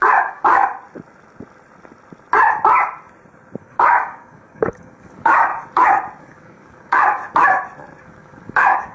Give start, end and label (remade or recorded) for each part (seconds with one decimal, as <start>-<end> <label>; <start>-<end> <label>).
0.0-0.6 remade; 0.6-3.6 recorded; 3.6-5.5 remade; 5.5-6.2 recorded; 6.2-7.2 remade; 7.2-8.0 recorded; 8.0-8.9 remade